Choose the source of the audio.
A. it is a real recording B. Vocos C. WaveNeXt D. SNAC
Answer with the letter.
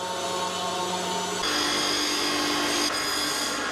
A